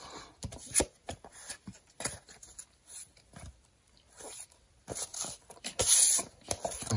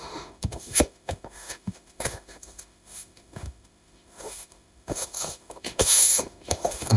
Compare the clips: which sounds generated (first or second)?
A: second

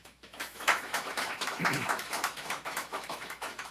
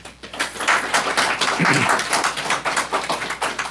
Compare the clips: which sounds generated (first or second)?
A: first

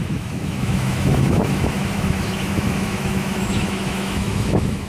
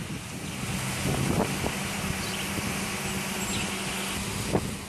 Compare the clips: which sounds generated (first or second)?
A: first